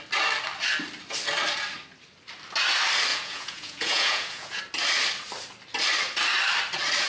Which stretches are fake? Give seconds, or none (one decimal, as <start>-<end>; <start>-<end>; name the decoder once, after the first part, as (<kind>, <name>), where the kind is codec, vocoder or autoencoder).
3.1-4.6 (vocoder, Vocos)